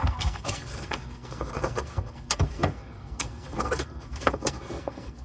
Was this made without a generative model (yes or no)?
no